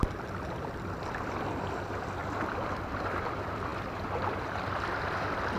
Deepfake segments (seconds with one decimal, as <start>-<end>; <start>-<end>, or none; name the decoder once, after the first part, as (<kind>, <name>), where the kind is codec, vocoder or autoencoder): none